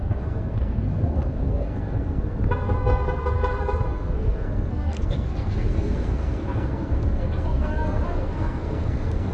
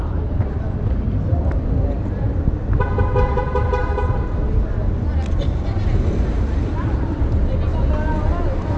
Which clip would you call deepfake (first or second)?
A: first